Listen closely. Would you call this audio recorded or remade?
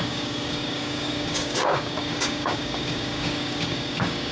remade